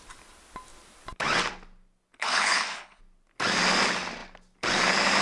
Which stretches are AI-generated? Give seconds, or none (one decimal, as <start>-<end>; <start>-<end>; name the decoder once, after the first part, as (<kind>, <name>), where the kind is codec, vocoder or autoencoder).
2.2-3.0 (codec, HILCodec)